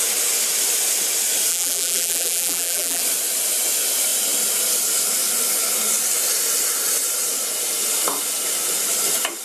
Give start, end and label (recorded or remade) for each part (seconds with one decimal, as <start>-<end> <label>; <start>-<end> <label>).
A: 0.0-1.5 recorded; 1.5-3.0 remade; 3.0-9.4 recorded